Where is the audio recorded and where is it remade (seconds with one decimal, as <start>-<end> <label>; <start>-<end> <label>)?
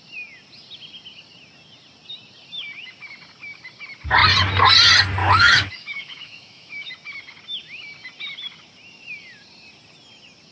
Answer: 0.0-5.2 recorded; 5.2-6.9 remade; 6.9-10.5 recorded